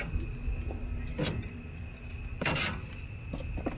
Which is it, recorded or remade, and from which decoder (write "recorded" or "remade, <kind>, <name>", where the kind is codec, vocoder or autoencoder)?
recorded